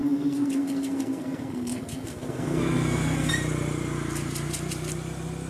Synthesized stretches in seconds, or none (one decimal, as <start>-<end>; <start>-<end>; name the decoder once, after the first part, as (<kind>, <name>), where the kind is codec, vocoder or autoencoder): 0.0-3.3 (codec, SNAC)